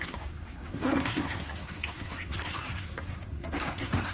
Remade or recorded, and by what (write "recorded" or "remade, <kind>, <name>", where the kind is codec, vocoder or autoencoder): remade, codec, SNAC